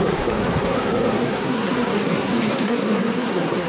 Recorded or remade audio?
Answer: remade